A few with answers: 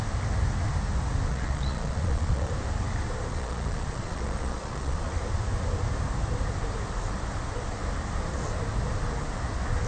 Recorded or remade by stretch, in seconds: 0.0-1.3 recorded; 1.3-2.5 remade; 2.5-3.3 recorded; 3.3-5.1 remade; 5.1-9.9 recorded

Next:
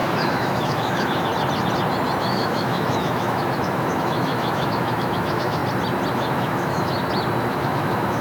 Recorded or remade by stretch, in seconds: 0.0-1.3 remade; 1.3-2.2 recorded; 2.2-5.6 remade; 5.6-6.1 recorded; 6.1-7.0 remade; 7.0-7.5 recorded; 7.5-8.2 remade

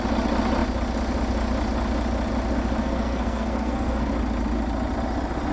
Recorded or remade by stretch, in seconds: 0.0-2.8 recorded; 2.8-4.1 remade; 4.1-5.5 recorded

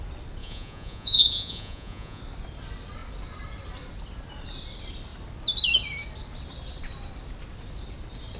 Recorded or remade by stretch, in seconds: 0.0-0.4 recorded; 0.4-2.2 remade; 2.2-8.4 recorded